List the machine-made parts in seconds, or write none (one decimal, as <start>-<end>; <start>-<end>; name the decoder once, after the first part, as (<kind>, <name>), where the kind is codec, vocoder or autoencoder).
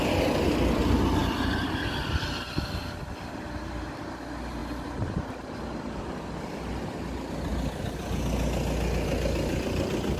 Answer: none